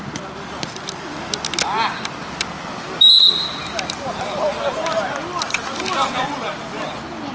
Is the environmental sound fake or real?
real